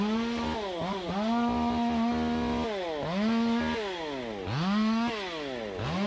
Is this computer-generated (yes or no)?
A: no